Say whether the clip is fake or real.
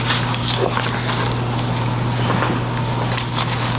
real